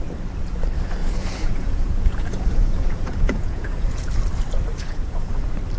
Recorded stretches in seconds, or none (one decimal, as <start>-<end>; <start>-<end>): 0.0-1.0; 4.1-4.7; 5.3-5.8